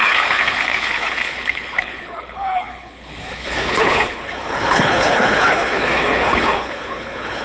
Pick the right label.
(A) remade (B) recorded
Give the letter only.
A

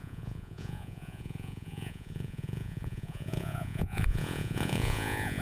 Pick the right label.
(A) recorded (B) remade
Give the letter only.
B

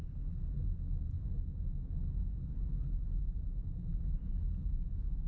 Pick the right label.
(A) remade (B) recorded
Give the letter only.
B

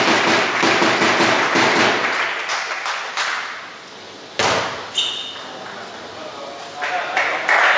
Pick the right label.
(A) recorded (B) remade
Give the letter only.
A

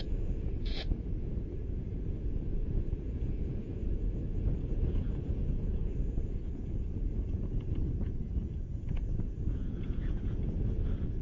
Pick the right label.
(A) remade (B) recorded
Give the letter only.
A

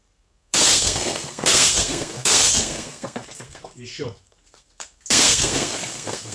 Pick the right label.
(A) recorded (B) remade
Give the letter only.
B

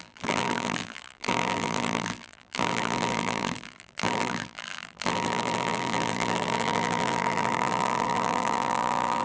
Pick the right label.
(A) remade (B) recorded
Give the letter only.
A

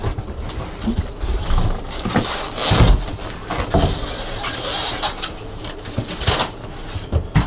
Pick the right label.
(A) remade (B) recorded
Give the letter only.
B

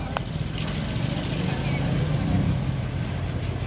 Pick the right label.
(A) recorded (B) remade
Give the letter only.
A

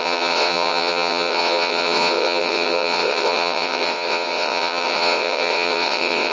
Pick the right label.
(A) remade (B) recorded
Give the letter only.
A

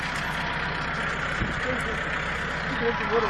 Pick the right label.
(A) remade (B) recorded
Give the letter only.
B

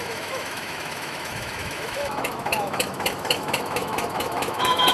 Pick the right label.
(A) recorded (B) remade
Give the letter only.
B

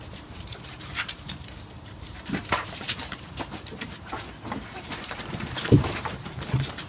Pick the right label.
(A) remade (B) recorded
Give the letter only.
A